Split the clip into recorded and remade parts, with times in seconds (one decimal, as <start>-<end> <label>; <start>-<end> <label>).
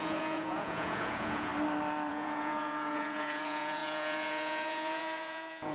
0.0-1.5 remade; 1.5-2.1 recorded; 2.1-5.7 remade